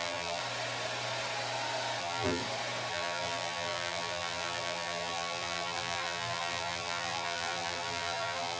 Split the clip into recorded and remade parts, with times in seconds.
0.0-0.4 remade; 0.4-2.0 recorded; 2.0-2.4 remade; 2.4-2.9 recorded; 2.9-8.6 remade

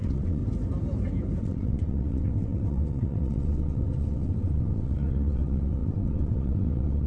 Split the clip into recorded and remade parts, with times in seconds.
0.0-0.4 remade; 0.4-1.4 recorded; 1.4-7.1 remade

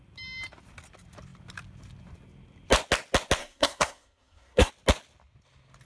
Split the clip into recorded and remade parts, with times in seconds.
0.0-3.4 recorded; 3.4-4.7 remade; 4.7-5.9 recorded

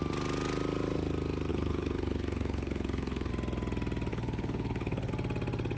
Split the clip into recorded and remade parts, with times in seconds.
0.0-1.5 recorded; 1.5-3.3 remade; 3.3-4.1 recorded; 4.1-5.1 remade; 5.1-5.8 recorded